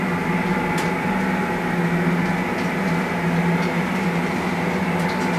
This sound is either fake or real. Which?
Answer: real